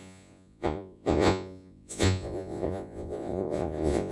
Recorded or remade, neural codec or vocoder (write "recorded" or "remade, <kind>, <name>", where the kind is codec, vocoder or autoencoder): remade, vocoder, Vocos